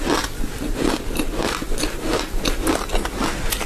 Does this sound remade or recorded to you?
recorded